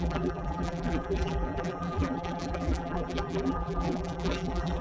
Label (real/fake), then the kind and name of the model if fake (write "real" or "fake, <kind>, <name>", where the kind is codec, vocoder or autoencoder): fake, vocoder, BigVGAN v2